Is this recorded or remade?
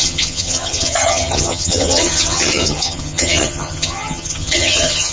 remade